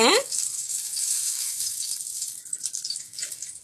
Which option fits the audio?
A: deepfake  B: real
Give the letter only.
A